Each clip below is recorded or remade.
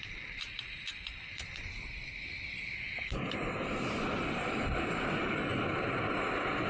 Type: recorded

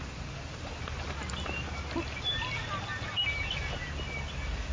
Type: recorded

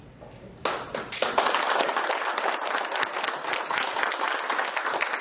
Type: recorded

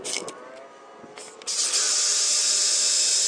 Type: recorded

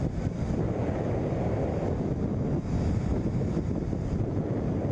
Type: recorded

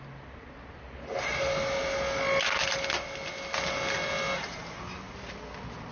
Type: recorded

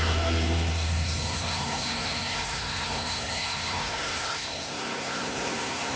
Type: remade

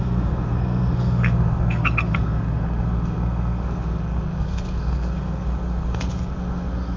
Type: remade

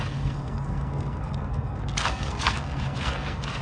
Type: remade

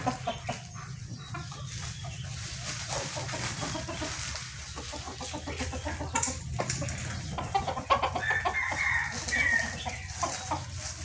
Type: recorded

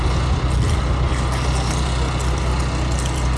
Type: recorded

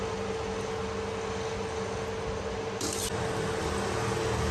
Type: recorded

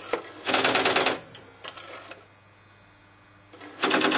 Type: recorded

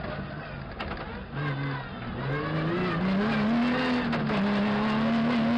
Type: recorded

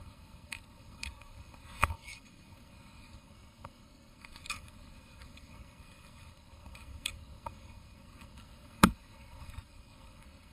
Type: remade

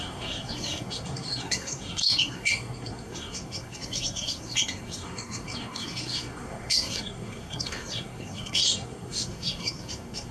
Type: remade